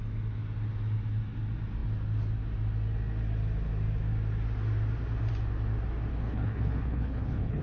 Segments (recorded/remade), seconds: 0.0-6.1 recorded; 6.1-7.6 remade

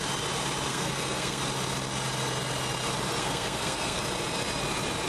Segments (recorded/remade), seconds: 0.0-0.7 recorded; 0.7-1.4 remade; 1.4-3.2 recorded; 3.2-4.0 remade; 4.0-5.1 recorded

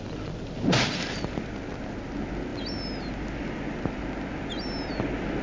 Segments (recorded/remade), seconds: 0.0-5.4 recorded

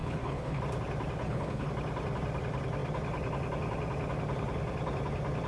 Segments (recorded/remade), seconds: 0.0-0.6 remade; 0.6-1.2 recorded; 1.2-1.7 remade; 1.7-5.5 recorded

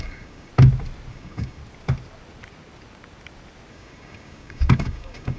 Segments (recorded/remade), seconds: 0.0-0.5 remade; 0.5-1.1 recorded; 1.1-1.6 remade; 1.6-3.7 recorded; 3.7-5.4 remade